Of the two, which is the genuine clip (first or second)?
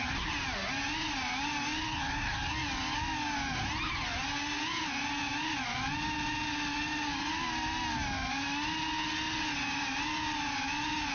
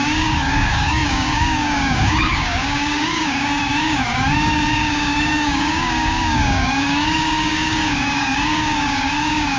first